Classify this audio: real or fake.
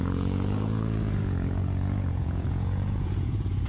fake